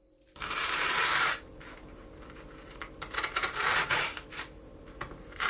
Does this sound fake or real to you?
fake